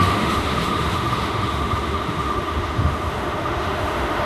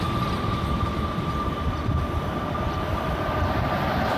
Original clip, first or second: second